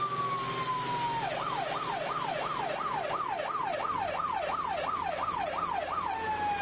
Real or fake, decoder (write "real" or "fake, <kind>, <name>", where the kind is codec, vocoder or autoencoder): real